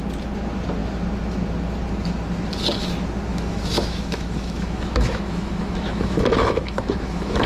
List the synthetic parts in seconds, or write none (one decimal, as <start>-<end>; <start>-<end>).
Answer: 3.3-7.5